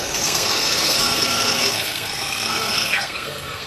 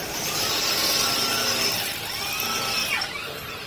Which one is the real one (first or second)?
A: second